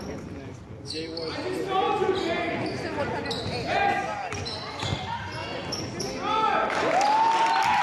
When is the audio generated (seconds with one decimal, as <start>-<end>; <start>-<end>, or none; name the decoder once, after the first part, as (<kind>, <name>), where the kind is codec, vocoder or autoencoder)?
none